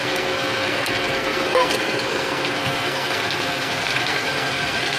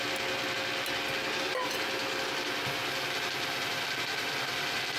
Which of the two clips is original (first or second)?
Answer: second